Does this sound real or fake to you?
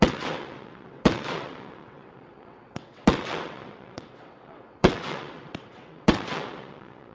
fake